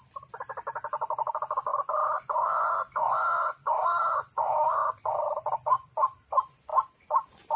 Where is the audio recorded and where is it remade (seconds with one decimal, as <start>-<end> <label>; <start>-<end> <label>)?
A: 0.0-1.7 remade; 1.7-3.7 recorded; 3.7-4.8 remade; 4.8-6.2 recorded; 6.2-6.7 remade; 6.7-7.6 recorded